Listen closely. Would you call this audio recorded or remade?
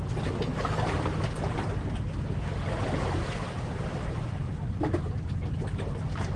recorded